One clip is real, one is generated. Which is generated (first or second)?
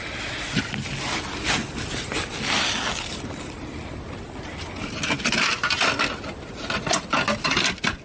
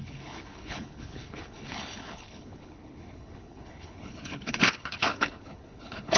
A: second